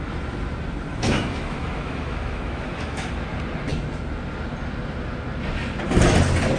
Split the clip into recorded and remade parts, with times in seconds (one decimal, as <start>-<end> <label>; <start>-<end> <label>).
0.0-0.9 recorded; 0.9-3.1 remade; 3.1-6.6 recorded